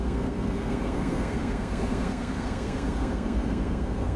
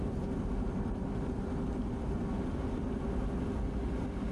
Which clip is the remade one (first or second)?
first